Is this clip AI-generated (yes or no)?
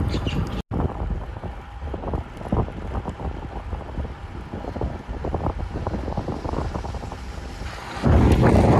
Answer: no